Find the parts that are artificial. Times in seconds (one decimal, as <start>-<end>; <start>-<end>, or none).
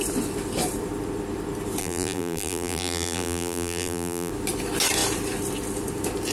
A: 1.8-4.3